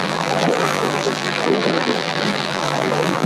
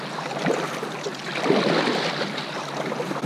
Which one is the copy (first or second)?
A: first